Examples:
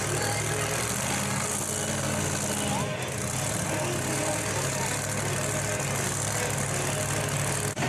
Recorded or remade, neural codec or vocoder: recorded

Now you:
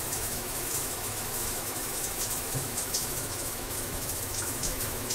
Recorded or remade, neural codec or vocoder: remade, autoencoder, DAC-VAE